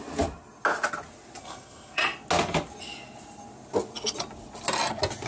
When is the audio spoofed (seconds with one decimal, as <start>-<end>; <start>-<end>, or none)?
1.4-2.0